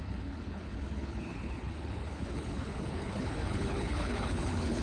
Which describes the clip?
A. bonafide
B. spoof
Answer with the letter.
B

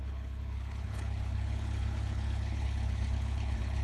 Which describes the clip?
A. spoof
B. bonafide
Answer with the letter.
A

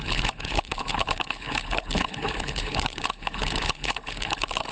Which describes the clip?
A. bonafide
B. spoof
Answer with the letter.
B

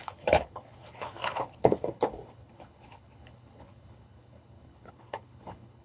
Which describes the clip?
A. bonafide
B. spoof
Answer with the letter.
B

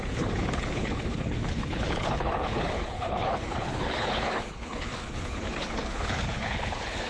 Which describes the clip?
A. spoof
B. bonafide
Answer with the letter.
A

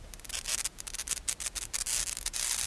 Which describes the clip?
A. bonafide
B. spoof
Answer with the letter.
A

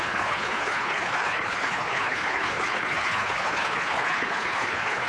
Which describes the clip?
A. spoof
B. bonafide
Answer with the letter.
A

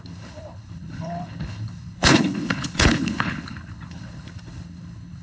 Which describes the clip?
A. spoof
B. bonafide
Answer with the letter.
A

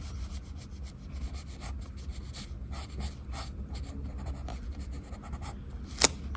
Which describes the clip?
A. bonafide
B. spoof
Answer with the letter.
A